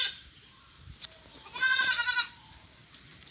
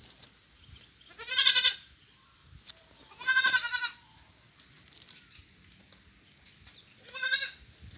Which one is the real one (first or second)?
second